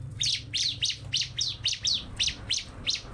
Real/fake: fake